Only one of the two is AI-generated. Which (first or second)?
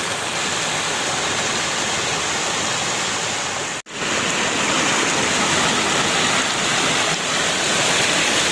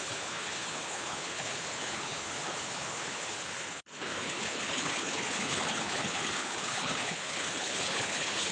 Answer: second